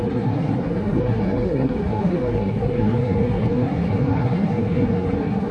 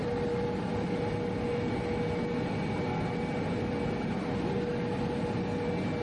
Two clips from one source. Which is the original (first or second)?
second